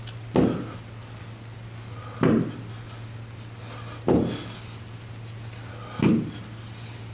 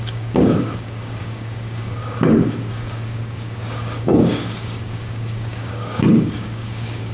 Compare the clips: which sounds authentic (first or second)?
first